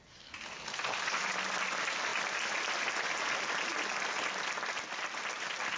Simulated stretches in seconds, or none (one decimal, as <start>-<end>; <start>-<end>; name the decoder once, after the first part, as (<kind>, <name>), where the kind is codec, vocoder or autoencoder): none